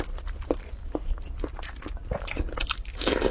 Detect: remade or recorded recorded